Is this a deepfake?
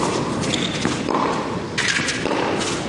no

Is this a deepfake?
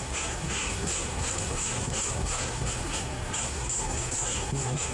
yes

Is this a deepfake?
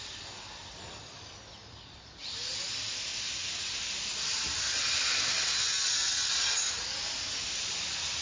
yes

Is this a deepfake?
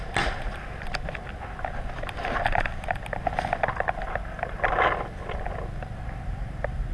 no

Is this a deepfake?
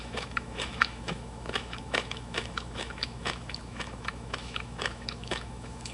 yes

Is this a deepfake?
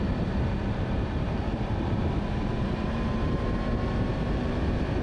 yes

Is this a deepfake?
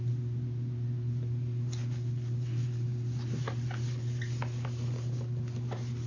no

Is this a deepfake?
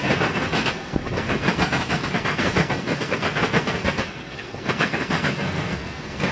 yes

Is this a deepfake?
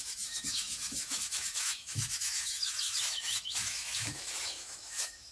yes